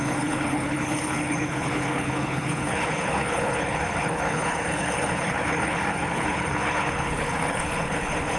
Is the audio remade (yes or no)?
yes